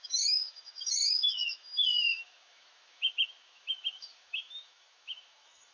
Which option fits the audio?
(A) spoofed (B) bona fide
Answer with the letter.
A